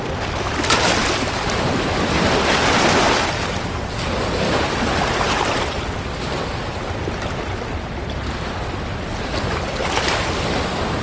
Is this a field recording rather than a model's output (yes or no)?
yes